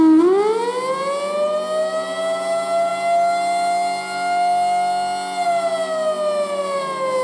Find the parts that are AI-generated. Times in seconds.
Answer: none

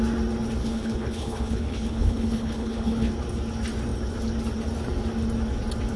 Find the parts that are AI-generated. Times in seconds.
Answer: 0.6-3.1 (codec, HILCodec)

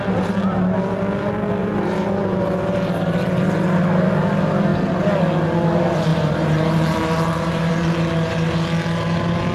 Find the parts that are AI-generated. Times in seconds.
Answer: 1.6-2.4 (vocoder, BigVGAN v2); 6.1-7.7

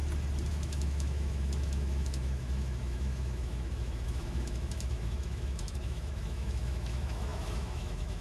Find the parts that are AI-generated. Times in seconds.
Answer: 0.5-8.2 (autoencoder, DAC-VAE)